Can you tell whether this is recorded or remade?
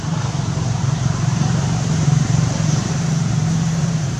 remade